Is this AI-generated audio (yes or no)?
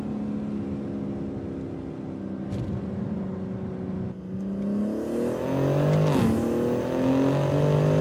no